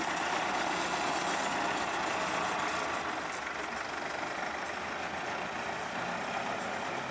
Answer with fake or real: real